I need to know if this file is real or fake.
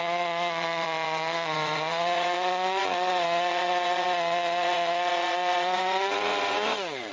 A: fake